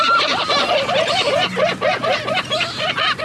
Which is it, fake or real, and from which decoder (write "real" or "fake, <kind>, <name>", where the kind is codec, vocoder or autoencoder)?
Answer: real